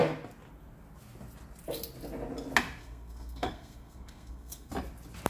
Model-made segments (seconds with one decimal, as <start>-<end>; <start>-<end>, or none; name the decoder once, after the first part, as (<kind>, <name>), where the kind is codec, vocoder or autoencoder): 2.8-4.7 (codec, SNAC)